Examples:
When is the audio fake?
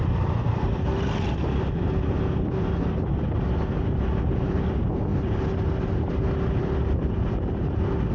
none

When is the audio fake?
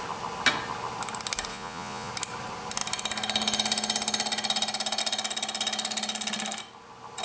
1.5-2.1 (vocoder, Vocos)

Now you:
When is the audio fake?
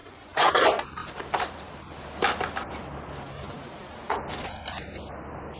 0.0-0.5 (vocoder, Vocos)